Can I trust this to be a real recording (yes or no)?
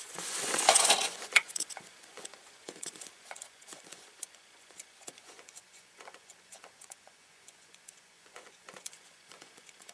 no